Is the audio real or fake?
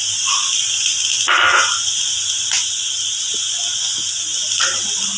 real